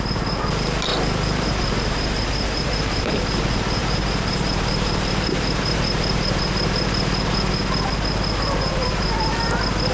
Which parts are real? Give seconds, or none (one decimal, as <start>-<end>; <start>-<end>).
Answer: 0.0-0.9; 3.1-3.8; 6.4-9.9